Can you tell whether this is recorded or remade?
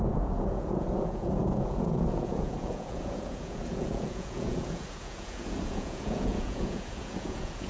remade